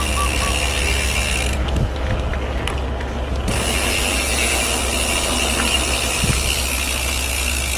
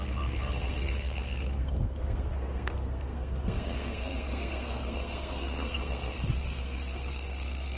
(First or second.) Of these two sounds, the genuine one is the first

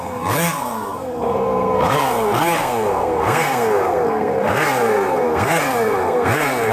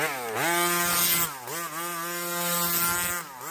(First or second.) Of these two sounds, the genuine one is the second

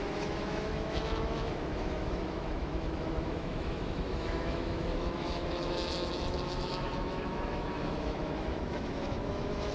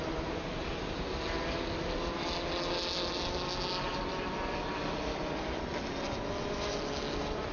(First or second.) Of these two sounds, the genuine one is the second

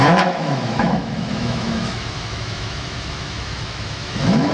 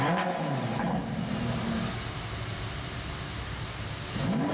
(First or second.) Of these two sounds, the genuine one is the second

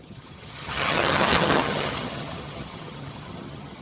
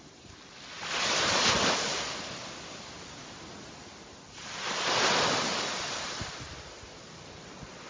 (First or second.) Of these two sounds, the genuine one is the second